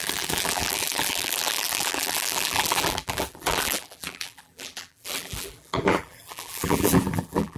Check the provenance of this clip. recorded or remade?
remade